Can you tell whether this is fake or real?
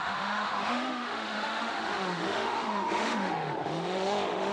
fake